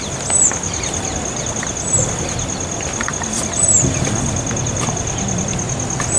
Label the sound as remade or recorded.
recorded